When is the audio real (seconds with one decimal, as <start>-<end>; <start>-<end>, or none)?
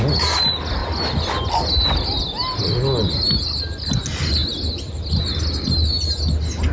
0.0-6.7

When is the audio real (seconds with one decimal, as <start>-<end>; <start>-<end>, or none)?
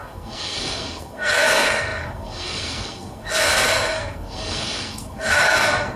none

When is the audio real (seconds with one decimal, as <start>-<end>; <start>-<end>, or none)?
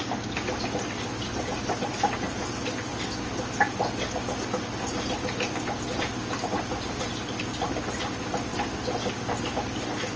0.0-10.2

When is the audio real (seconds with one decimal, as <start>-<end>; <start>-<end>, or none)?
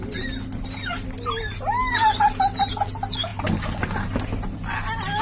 0.0-5.2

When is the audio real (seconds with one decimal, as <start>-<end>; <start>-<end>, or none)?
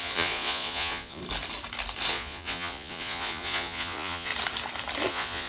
1.2-2.1; 4.3-5.1